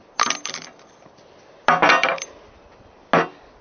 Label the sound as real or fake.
real